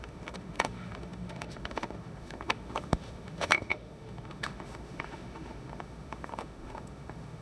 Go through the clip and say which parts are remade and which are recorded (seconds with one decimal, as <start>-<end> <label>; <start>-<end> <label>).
0.0-7.4 remade